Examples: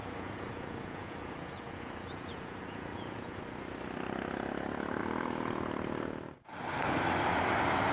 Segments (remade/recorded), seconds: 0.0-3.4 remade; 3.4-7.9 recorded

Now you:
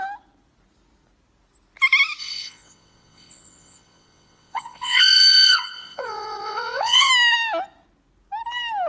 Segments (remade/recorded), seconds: 0.0-2.2 recorded; 2.2-7.1 remade; 7.1-8.9 recorded

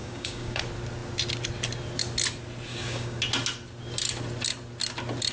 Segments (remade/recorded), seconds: 0.0-0.6 remade; 0.6-2.7 recorded; 2.7-3.2 remade; 3.2-5.3 recorded

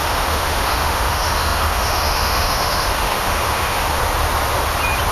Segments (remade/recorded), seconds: 0.0-4.0 remade; 4.0-5.1 recorded